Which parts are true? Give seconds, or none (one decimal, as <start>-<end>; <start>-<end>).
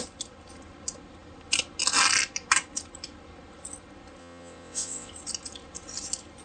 0.0-4.2; 5.1-6.4